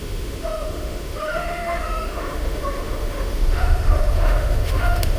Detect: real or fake fake